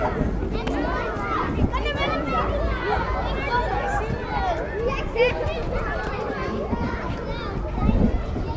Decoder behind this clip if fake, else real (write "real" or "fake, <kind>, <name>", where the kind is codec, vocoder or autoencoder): real